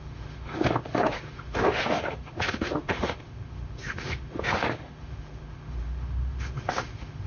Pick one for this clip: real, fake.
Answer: fake